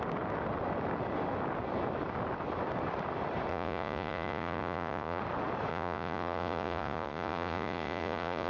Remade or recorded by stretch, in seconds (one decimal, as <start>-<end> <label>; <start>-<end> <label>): 0.0-3.5 recorded; 3.5-5.2 remade; 5.2-5.7 recorded; 5.7-8.5 remade